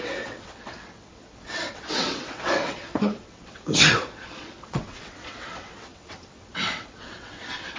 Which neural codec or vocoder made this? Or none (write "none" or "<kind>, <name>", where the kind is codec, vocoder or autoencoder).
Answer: vocoder, WaveNeXt